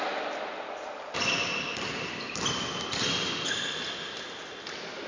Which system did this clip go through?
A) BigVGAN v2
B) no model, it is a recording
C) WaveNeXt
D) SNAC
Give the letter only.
B